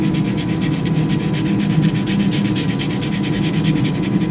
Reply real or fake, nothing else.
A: real